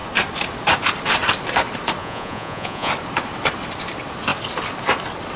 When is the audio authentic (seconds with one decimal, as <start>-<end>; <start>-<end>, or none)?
0.0-2.0; 2.9-5.4